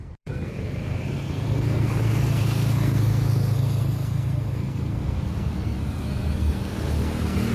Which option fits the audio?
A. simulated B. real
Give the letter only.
A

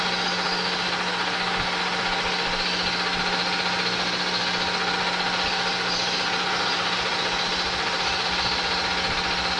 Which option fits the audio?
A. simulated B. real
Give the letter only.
B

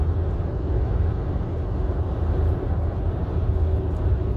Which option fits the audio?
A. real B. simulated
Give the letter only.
A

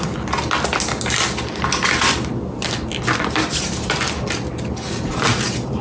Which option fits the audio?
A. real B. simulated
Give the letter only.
A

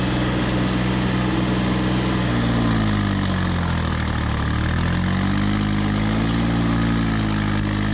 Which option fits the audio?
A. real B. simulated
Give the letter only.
A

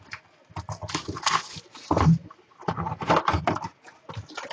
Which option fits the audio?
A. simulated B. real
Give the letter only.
B